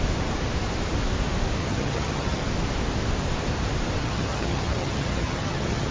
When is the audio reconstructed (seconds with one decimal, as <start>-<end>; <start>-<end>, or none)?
1.6-2.4; 4.0-5.9